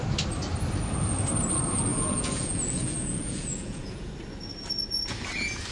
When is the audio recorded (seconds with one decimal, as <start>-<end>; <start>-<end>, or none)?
0.0-1.9; 4.1-5.7